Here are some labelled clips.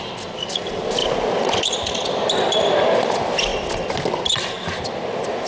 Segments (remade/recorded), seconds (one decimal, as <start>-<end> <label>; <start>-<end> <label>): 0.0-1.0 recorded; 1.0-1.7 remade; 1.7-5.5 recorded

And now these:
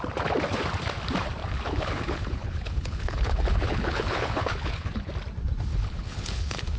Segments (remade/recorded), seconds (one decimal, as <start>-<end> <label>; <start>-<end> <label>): 0.0-1.4 recorded; 1.4-5.1 remade; 5.1-5.7 recorded; 5.7-6.8 remade

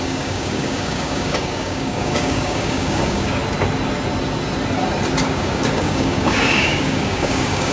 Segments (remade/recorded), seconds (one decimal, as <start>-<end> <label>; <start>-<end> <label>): 0.0-3.4 remade; 3.4-5.2 recorded; 5.2-7.7 remade

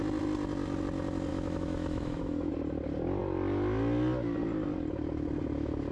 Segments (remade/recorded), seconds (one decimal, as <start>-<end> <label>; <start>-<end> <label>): 0.0-1.3 recorded; 1.3-2.5 remade; 2.5-5.9 recorded

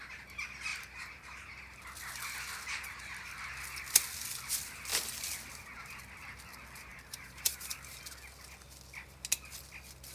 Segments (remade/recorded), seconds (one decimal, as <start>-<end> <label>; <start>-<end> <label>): 0.0-0.7 recorded; 0.7-1.8 remade; 1.8-6.9 recorded; 6.9-8.0 remade; 8.0-10.1 recorded